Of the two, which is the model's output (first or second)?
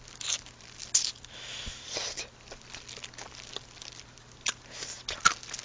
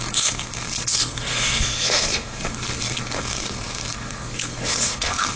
second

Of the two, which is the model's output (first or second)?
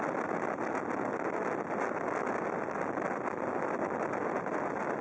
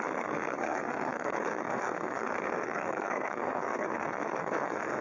second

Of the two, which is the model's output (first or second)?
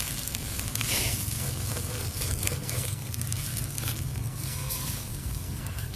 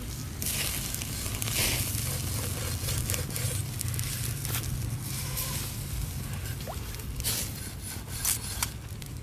first